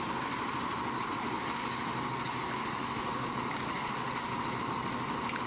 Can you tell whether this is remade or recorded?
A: recorded